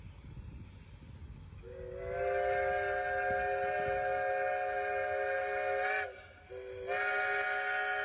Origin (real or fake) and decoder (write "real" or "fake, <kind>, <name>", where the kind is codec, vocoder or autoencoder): real